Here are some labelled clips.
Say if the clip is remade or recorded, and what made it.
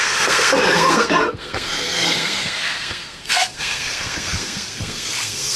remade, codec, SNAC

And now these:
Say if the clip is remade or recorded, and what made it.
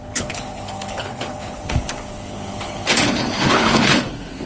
remade, codec, HILCodec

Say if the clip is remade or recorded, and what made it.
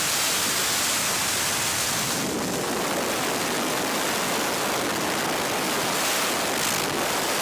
recorded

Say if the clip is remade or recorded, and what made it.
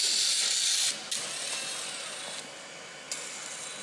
recorded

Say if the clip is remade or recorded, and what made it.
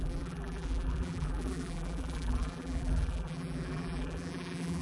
remade, vocoder, BigVGAN v2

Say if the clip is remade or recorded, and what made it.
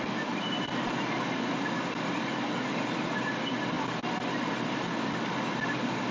recorded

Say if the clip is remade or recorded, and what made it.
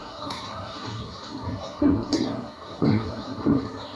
remade, codec, SNAC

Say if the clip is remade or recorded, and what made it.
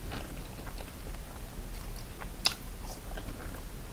recorded